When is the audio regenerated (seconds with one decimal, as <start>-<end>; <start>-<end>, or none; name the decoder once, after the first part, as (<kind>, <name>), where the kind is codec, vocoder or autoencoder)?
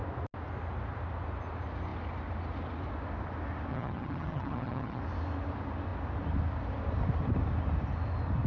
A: 3.7-5.0 (vocoder, HiFi-GAN)